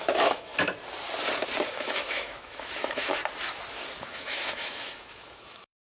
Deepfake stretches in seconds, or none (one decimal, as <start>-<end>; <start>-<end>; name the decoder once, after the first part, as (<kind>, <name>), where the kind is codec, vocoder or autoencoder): 0.0-0.5 (autoencoder, DAC-VAE); 1.7-3.2; 4.0-5.8